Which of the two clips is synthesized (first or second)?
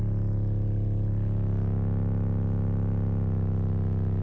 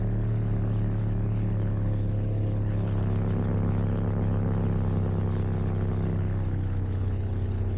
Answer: second